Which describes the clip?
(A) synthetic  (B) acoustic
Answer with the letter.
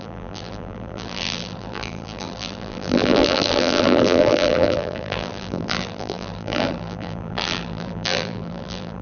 A